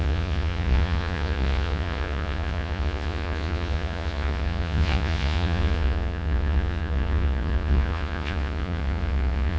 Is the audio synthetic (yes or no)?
yes